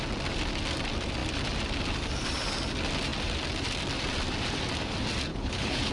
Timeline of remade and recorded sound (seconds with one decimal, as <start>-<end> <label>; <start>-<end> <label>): 0.0-5.3 recorded; 5.3-5.9 remade